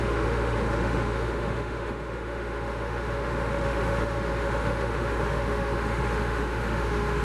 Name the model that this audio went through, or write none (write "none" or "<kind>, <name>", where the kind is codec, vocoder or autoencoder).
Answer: autoencoder, DAC-VAE